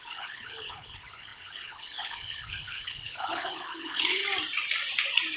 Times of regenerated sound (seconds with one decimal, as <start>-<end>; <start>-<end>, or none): 0.0-4.2